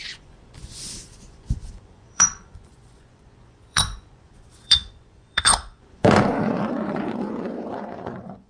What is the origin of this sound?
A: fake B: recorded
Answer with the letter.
A